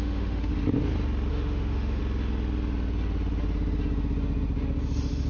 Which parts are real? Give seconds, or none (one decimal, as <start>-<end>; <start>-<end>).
0.5-1.3; 2.0-5.3